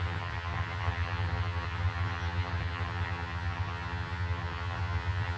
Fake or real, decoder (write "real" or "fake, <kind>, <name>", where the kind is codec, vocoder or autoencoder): fake, vocoder, HiFi-GAN